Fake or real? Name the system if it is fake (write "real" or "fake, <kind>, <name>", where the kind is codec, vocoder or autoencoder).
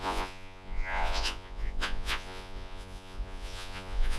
fake, vocoder, Vocos